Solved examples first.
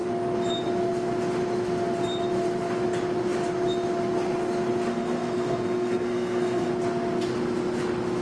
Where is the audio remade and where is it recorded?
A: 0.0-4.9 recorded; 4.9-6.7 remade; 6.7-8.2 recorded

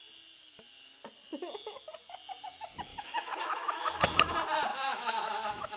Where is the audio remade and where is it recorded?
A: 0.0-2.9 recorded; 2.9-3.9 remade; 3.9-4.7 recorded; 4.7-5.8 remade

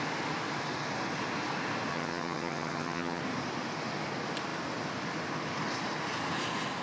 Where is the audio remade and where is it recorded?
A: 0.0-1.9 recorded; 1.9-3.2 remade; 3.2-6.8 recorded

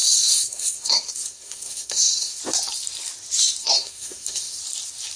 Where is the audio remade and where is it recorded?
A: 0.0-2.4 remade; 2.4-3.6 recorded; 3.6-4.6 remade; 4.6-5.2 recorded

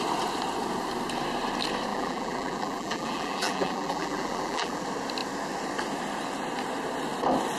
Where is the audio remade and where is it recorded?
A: 0.0-1.9 recorded; 1.9-4.8 remade; 4.8-7.6 recorded

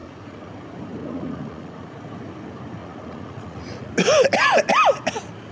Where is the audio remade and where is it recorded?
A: 0.0-0.5 remade; 0.5-1.0 recorded; 1.0-1.9 remade; 1.9-2.8 recorded; 2.8-3.9 remade; 3.9-5.5 recorded